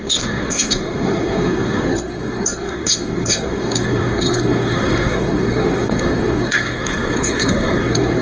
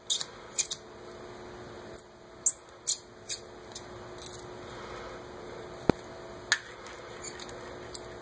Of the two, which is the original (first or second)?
second